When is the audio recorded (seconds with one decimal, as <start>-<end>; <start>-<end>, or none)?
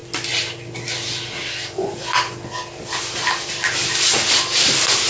0.0-5.1